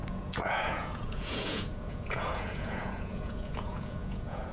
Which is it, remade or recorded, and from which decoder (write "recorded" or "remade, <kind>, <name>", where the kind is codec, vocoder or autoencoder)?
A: remade, vocoder, Vocos